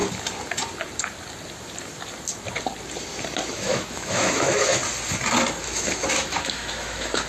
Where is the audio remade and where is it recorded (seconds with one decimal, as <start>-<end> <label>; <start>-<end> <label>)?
0.0-3.5 recorded; 3.5-4.8 remade; 4.8-5.6 recorded; 5.6-7.3 remade